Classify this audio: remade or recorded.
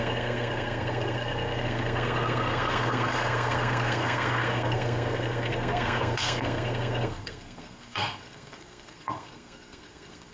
remade